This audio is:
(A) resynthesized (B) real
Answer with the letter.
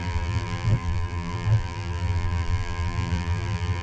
A